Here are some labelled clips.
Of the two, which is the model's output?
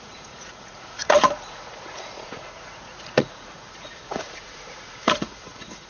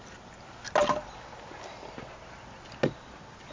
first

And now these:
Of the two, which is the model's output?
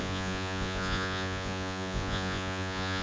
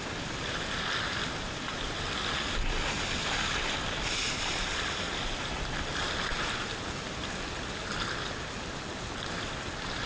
first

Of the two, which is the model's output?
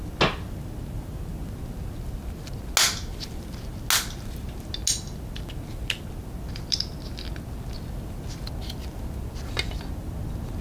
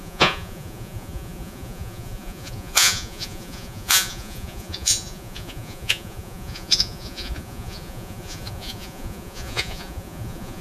second